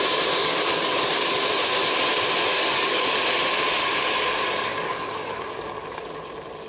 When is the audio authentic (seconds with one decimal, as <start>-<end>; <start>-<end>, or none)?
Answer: 0.0-0.4; 1.3-2.5; 3.0-4.7; 5.4-6.7